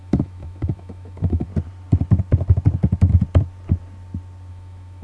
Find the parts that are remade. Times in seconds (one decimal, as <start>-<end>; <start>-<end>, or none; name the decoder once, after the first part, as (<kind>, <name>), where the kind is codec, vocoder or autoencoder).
0.0-1.5 (autoencoder, DAC-VAE); 4.5-5.0